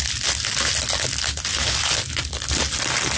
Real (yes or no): yes